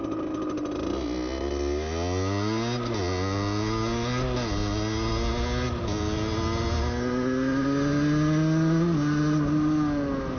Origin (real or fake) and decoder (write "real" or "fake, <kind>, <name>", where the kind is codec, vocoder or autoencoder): real